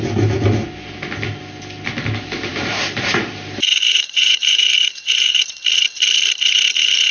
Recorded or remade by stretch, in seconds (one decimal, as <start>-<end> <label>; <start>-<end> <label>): 0.0-2.5 recorded; 2.5-3.3 remade; 3.3-3.7 recorded; 3.7-5.7 remade; 5.7-7.1 recorded

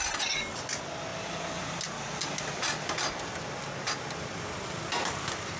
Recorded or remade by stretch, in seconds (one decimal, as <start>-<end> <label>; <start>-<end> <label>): 0.0-1.1 recorded; 1.1-1.9 remade; 1.9-5.6 recorded

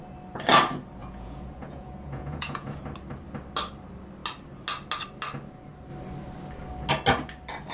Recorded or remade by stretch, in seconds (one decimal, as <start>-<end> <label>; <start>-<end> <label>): 0.0-1.0 recorded; 1.0-2.8 remade; 2.8-7.7 recorded

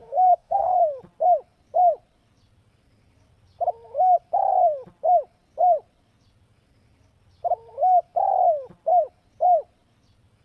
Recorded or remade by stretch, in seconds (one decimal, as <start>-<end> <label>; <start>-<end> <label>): 0.0-0.8 remade; 0.8-10.4 recorded

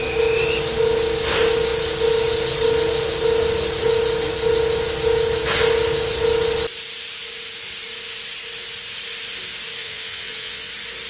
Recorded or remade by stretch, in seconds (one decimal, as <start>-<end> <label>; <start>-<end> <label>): 0.0-9.8 recorded; 9.8-10.7 remade; 10.7-11.1 recorded

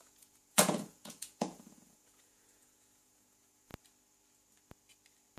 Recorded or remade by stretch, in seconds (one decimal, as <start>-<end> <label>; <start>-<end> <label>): 0.0-3.7 remade; 3.7-5.4 recorded

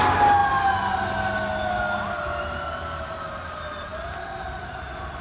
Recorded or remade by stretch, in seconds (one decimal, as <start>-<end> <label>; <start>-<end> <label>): 0.0-5.2 recorded

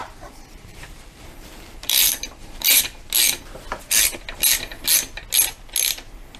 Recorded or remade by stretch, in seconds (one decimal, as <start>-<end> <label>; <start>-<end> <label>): 0.0-2.8 remade; 2.8-6.4 recorded